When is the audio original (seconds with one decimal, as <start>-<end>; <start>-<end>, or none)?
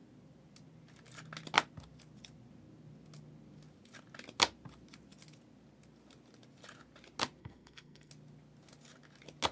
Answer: 0.0-7.4; 8.1-9.5